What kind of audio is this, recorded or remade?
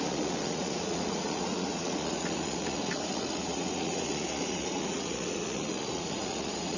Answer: remade